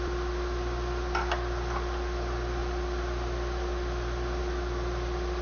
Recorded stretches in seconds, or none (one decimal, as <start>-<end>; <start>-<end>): 0.0-5.4